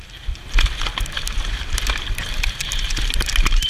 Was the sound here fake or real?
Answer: real